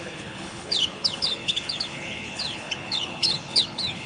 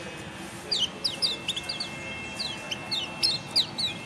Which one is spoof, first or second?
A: first